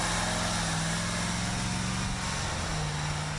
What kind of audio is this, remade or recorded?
recorded